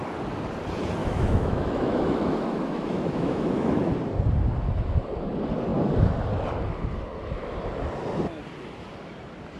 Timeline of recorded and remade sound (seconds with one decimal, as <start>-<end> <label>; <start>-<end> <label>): 0.0-1.0 recorded; 1.0-3.9 remade; 3.9-9.6 recorded